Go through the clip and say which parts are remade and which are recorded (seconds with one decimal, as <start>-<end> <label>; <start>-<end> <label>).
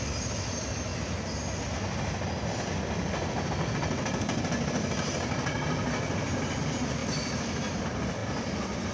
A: 0.0-8.9 recorded